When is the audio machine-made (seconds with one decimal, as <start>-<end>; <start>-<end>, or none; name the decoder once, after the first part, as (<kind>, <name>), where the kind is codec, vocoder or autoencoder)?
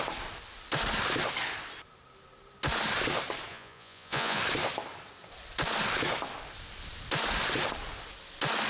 3.5-4.4 (vocoder, Vocos)